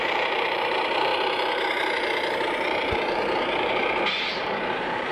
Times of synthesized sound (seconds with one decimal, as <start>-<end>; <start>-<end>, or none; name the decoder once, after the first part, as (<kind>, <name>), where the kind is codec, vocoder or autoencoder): 0.0-1.1 (vocoder, BigVGAN v2); 2.3-5.1

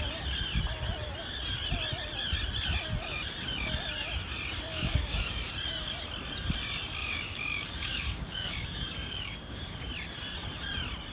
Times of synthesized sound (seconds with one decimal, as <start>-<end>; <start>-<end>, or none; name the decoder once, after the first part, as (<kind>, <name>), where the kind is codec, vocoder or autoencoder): 4.7-5.5 (codec, DAC); 7.0-9.9